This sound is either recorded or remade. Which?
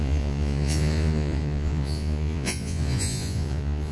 remade